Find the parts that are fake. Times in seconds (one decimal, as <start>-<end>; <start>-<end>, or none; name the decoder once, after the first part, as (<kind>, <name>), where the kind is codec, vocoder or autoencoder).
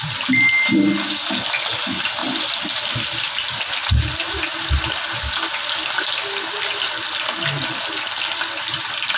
none